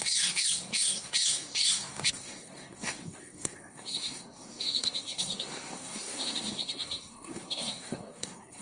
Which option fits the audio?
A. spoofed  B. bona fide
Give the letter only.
A